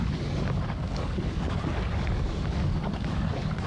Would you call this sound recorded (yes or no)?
no